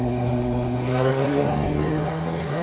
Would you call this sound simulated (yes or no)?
yes